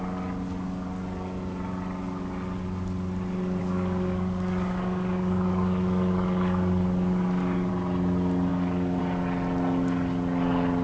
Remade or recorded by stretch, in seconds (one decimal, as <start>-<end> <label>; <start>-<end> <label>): 0.0-3.6 recorded; 3.6-7.7 remade; 7.7-8.5 recorded; 8.5-9.0 remade; 9.0-10.8 recorded